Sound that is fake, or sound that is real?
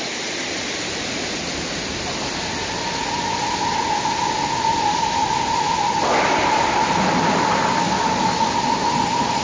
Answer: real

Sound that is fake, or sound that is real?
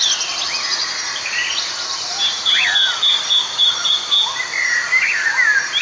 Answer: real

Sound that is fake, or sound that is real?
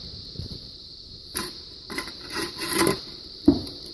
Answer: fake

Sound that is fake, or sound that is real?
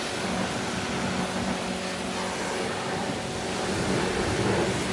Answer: real